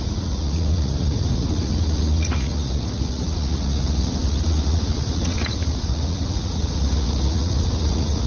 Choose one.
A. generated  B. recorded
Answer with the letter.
A